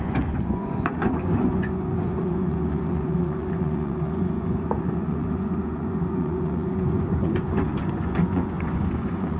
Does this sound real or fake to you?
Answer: fake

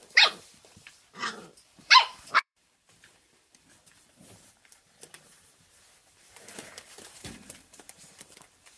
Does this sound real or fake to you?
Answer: fake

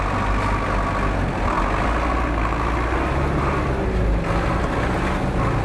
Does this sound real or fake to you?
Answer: real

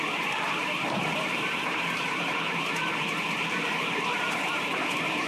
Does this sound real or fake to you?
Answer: fake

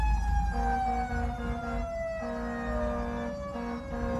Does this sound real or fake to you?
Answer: real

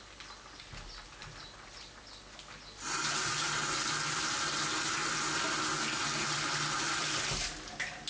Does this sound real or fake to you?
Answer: real